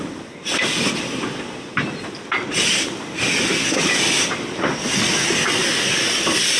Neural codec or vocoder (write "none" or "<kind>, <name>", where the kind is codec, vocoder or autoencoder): none